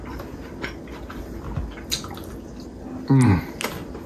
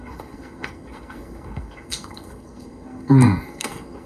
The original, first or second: first